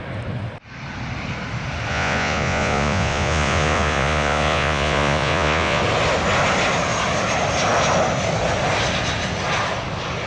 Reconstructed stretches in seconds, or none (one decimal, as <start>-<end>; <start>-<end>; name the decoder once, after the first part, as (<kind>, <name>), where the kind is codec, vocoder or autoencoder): 1.9-5.8 (vocoder, Vocos)